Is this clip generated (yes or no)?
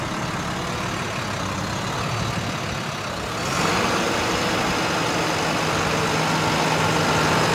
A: no